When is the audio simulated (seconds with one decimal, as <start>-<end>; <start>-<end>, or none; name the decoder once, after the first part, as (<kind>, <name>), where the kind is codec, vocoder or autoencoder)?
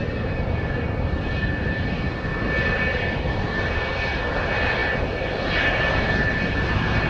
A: none